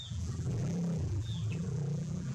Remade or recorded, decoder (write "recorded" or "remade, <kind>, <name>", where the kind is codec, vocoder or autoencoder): remade, vocoder, BigVGAN v2